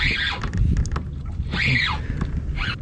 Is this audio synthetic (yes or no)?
no